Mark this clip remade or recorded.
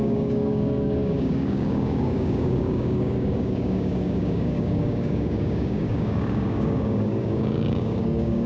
remade